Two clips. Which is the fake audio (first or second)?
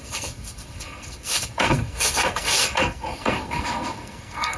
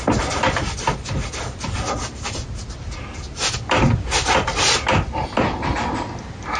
first